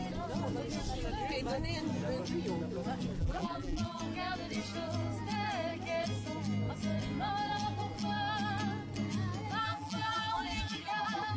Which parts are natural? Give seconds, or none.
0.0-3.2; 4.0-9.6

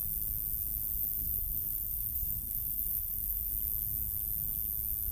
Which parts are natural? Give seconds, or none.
0.0-1.0; 3.5-5.1

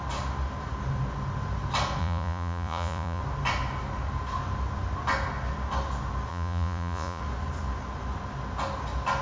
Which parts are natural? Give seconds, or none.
0.0-2.0; 3.2-6.3; 7.2-9.2

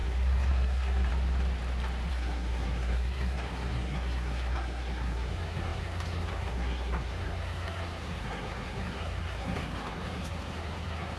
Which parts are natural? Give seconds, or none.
1.1-2.1

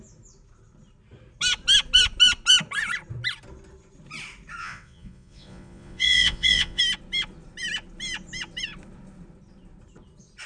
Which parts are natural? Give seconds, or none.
0.0-4.6; 6.8-10.5

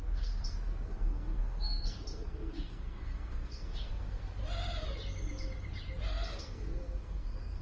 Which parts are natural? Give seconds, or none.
4.4-6.3

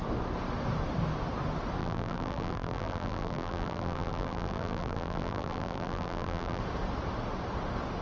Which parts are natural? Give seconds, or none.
0.0-1.8; 6.6-8.0